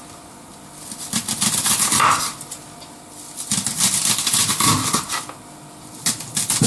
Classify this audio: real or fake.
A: real